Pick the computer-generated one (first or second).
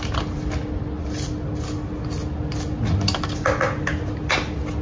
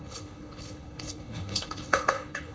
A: second